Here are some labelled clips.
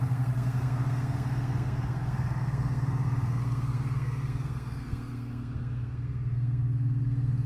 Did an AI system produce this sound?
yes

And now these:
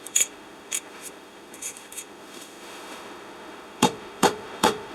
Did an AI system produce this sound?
yes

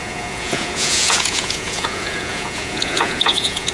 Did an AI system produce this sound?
yes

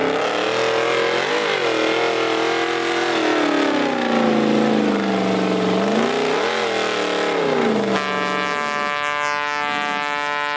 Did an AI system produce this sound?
no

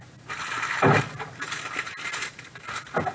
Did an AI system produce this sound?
no